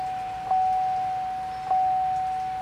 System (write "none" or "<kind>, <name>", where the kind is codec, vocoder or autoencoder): none